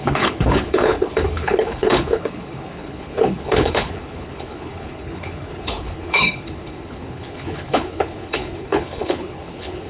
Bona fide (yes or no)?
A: no